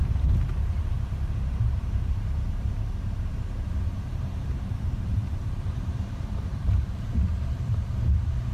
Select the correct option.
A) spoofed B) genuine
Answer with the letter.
A